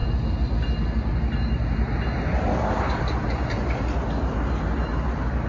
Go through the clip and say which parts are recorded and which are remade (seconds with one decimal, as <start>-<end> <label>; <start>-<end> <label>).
0.0-5.5 recorded